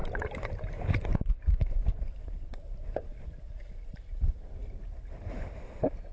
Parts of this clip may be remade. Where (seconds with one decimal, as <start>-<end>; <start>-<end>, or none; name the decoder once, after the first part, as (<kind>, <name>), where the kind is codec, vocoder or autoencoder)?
0.0-4.6 (vocoder, BigVGAN v2); 5.3-6.1